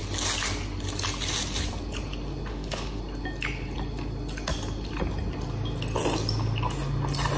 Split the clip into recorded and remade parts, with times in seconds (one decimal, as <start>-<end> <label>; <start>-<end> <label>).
0.0-2.5 recorded; 2.5-3.0 remade; 3.0-7.4 recorded